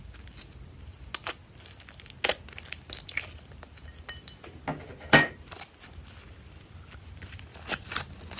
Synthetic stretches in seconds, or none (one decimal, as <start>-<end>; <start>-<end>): none